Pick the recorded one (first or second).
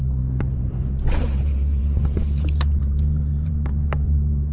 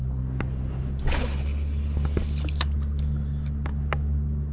second